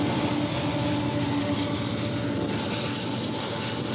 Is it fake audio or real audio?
real